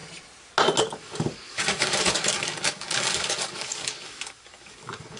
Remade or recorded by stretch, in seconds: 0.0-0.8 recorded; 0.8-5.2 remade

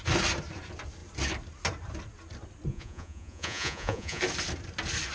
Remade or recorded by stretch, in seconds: 0.0-2.7 recorded; 2.7-4.2 remade; 4.2-5.1 recorded

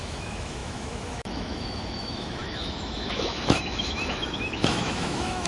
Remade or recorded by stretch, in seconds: 0.0-5.5 remade

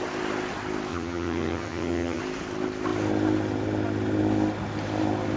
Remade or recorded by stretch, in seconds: 0.0-0.9 recorded; 0.9-2.2 remade; 2.2-5.4 recorded

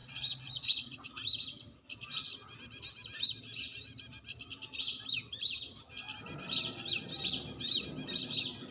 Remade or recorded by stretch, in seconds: 0.0-1.1 remade; 1.1-8.7 recorded